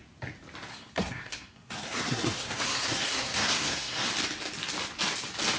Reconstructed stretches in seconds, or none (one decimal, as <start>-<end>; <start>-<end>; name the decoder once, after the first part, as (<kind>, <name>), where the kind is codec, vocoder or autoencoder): 0.7-4.1 (codec, SNAC)